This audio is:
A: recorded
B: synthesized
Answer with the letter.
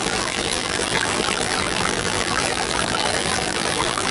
B